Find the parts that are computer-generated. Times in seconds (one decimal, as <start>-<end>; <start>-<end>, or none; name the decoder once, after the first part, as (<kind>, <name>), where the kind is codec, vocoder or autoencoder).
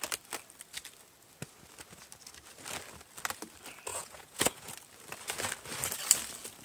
3.9-4.7 (vocoder, Vocos)